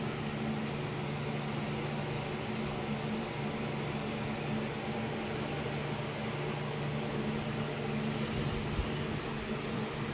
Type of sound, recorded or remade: recorded